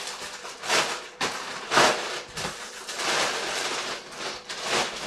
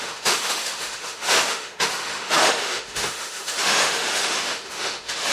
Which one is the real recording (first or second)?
first